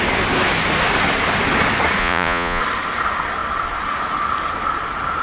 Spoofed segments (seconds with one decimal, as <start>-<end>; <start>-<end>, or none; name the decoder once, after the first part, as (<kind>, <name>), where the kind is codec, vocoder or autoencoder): 2.0-2.6 (vocoder, Vocos)